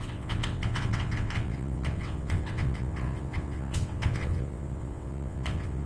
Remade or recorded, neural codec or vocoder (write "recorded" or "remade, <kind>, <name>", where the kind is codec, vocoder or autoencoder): remade, vocoder, WaveNeXt